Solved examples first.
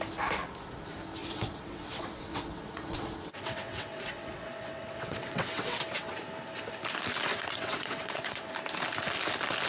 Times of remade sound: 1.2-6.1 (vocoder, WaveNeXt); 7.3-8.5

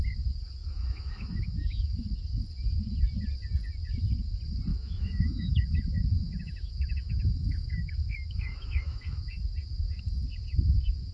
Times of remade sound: 0.6-2.0 (autoencoder, DAC-VAE); 4.7-9.4

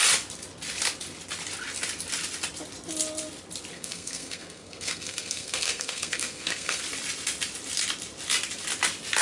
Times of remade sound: 3.7-6.8 (codec, SNAC)

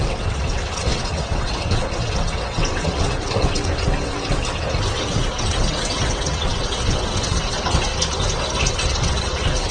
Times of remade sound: 0.0-4.4 (vocoder, WaveNeXt); 5.1-7.9; 8.7-9.7

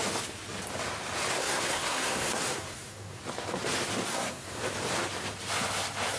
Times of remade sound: 1.4-3.2 (codec, SNAC); 4.1-4.6

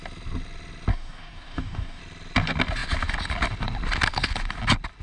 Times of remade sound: 0.9-2.0 (codec, DAC)